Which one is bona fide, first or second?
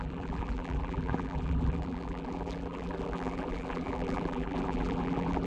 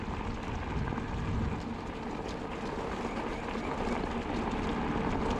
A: second